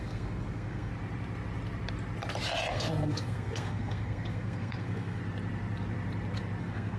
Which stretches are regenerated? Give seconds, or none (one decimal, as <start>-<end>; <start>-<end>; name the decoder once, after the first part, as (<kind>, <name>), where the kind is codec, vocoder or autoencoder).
0.0-0.9 (codec, SNAC); 2.7-5.2; 6.6-7.0